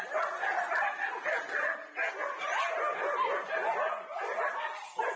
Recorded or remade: recorded